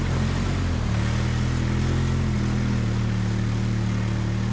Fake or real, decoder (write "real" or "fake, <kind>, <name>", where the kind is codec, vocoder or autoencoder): real